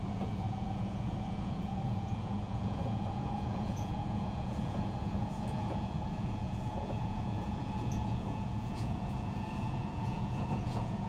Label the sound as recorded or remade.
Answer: remade